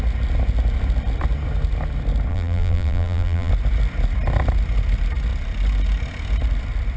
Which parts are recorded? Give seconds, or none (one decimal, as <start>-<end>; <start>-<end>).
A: 0.0-2.3; 3.5-7.0